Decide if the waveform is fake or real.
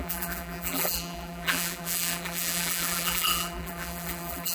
fake